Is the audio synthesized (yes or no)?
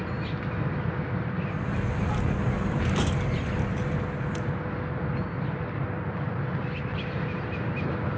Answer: no